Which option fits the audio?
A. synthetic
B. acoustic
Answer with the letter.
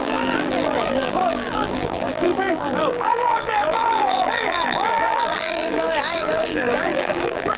A